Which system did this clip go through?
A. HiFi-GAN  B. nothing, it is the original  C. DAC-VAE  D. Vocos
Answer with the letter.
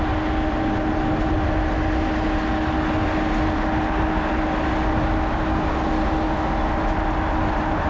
B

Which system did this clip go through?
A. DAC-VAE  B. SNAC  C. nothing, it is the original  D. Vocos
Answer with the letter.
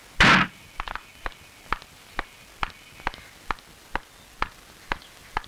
C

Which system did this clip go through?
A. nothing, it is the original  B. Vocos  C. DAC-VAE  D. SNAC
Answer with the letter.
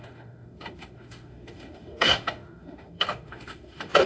C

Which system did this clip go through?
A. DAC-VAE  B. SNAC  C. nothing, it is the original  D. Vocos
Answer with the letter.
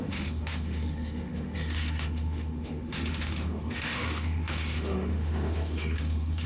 A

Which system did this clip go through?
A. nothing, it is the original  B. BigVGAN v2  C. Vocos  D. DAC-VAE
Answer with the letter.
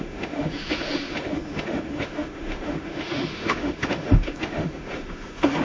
D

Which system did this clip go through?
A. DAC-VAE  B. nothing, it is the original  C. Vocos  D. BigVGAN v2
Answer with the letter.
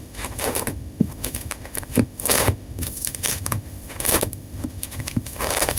A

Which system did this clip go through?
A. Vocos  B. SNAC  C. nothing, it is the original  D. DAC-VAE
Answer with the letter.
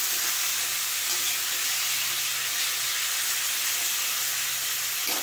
C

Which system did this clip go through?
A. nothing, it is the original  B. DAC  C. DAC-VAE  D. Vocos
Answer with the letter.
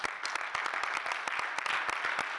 A